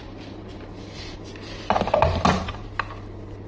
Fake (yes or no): no